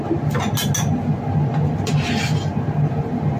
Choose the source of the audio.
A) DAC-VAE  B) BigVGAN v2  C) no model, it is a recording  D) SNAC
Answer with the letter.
C